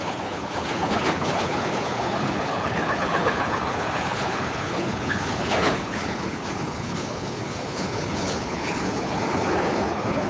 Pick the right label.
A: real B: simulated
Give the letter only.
B